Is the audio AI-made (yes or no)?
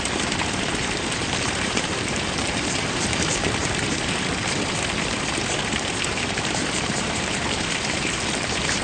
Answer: yes